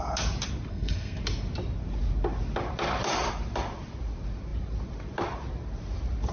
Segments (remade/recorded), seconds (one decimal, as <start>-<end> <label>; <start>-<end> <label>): 0.0-0.7 recorded; 0.7-1.2 remade; 1.2-6.3 recorded